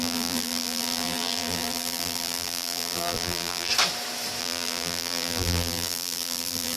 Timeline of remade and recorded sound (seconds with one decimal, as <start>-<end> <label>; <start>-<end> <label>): 0.0-3.7 remade; 3.7-4.4 recorded; 4.4-6.8 remade